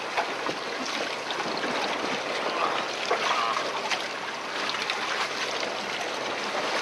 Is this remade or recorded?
recorded